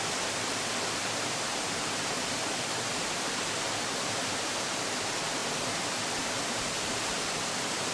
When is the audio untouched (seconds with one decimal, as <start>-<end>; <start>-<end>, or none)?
0.0-7.9